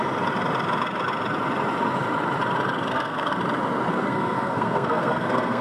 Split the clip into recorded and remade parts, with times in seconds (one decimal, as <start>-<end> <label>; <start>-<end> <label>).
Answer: 0.0-2.9 recorded; 2.9-3.4 remade; 3.4-3.9 recorded; 3.9-5.6 remade

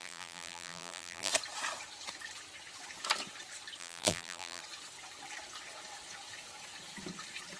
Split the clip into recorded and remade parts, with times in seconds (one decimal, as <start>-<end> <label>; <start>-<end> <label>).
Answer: 0.0-1.3 remade; 1.3-3.8 recorded; 3.8-4.6 remade; 4.6-7.6 recorded

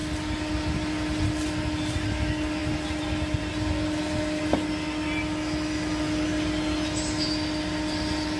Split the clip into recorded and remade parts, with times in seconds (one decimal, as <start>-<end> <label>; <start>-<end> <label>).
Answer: 0.0-8.4 recorded

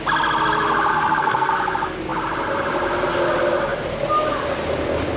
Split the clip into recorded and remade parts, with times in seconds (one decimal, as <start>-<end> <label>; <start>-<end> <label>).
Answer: 0.0-0.9 recorded; 0.9-1.5 remade; 1.5-5.2 recorded

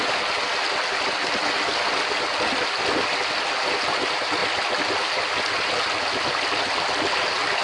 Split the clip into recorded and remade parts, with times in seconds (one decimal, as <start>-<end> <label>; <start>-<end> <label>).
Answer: 0.0-7.6 recorded

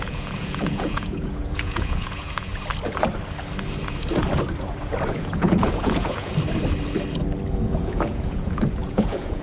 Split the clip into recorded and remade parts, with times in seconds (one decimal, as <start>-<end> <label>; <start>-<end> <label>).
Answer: 0.0-2.5 remade; 2.5-5.1 recorded; 5.1-6.3 remade; 6.3-7.5 recorded; 7.5-9.4 remade

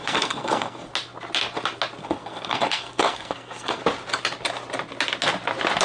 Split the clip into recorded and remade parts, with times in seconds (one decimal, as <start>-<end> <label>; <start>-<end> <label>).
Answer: 0.0-0.9 remade; 0.9-2.0 recorded; 2.0-3.8 remade; 3.8-5.8 recorded

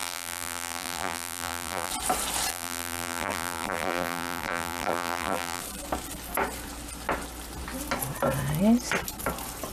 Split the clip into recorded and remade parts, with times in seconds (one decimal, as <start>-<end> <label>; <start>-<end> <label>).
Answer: 0.0-1.9 remade; 1.9-2.5 recorded; 2.5-5.6 remade; 5.6-9.7 recorded